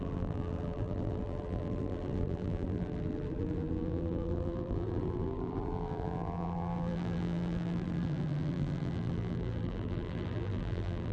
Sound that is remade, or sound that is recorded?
remade